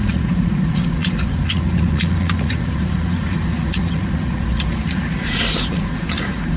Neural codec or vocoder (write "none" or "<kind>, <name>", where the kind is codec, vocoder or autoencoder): vocoder, Vocos